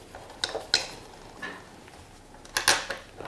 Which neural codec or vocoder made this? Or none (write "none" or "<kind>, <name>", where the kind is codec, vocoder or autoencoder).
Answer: none